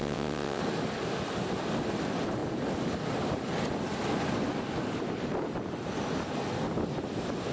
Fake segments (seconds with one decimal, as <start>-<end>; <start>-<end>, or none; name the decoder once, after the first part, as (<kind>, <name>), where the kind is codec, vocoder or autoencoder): 0.0-0.6 (vocoder, WaveNeXt)

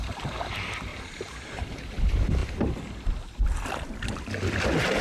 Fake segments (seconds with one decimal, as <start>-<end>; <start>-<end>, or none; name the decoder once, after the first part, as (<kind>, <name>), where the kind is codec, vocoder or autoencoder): 0.9-1.8 (vocoder, BigVGAN v2)

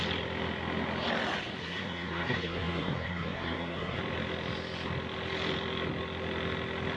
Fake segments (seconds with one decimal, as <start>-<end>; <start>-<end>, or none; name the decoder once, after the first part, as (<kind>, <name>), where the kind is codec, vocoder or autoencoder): 1.6-4.0 (codec, SNAC)

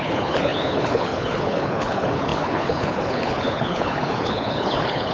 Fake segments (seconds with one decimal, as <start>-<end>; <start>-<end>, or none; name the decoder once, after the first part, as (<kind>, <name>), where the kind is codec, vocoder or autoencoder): 0.0-5.1 (codec, HILCodec)

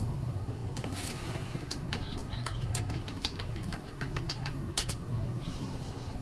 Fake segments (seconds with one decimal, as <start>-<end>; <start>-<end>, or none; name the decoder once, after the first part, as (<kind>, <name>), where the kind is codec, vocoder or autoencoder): 0.0-6.2 (codec, SNAC)